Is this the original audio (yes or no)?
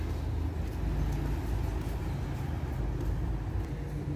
yes